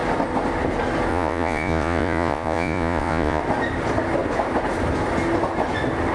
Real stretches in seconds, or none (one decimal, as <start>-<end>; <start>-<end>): 0.0-1.1; 3.4-6.1